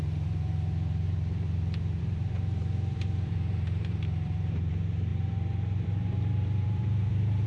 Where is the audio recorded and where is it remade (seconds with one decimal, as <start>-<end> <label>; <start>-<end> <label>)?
0.0-7.5 remade